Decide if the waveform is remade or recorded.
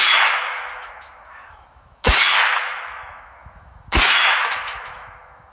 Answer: remade